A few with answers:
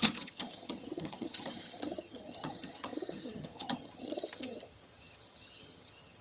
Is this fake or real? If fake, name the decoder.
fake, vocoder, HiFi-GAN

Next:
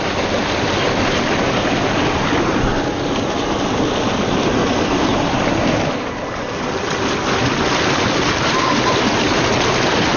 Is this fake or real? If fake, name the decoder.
real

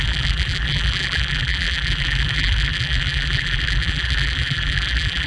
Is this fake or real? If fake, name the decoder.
fake, vocoder, BigVGAN v2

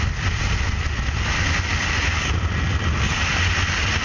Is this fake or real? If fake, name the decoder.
real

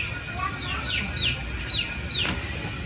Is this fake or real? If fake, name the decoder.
real